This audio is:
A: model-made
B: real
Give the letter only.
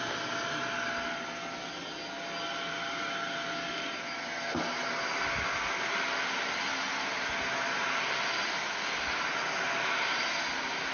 B